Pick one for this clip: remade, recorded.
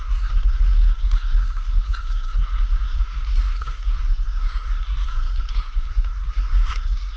remade